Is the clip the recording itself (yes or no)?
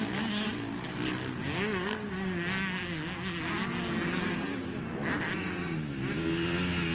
yes